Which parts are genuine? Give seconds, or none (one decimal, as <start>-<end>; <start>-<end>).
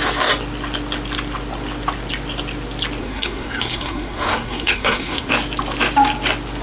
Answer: 0.0-3.0; 5.3-6.6